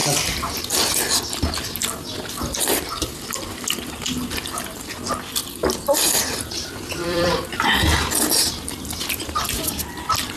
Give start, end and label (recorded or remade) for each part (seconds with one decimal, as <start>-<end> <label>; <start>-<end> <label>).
0.0-5.4 recorded; 5.4-8.4 remade; 8.4-10.4 recorded